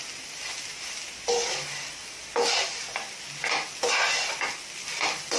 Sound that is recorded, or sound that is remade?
recorded